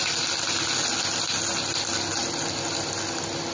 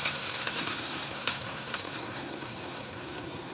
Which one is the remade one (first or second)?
second